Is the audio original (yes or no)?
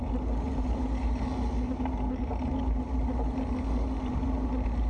yes